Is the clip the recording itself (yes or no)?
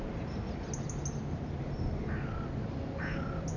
yes